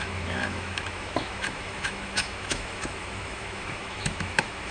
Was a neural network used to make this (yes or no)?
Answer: yes